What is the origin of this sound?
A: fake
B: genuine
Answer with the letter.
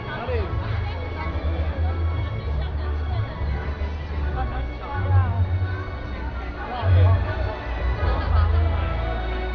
B